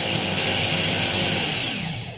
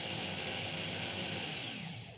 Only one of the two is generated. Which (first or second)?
second